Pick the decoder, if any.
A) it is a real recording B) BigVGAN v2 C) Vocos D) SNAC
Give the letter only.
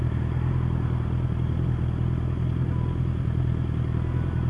A